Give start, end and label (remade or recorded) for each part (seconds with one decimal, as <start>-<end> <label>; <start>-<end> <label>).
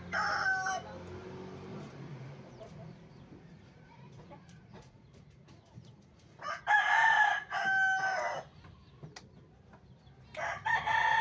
0.0-1.7 recorded; 1.7-6.6 remade; 6.6-11.2 recorded